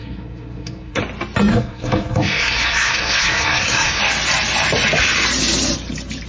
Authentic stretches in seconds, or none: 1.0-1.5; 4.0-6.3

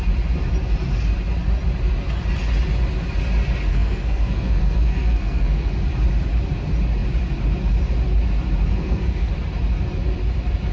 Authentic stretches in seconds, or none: 0.0-3.7; 5.7-8.7; 9.3-10.7